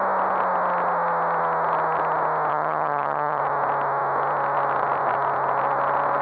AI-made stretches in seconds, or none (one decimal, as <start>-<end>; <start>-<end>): 2.5-3.4